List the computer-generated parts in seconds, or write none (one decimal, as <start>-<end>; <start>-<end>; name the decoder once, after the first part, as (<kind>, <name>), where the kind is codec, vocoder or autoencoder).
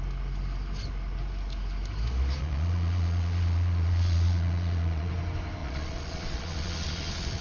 2.4-5.1 (vocoder, Vocos); 5.6-7.4